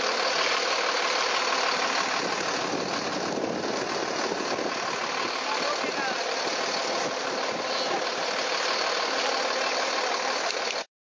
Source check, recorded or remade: recorded